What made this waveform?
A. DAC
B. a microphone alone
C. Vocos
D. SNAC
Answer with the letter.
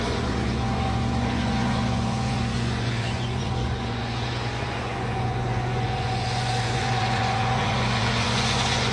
C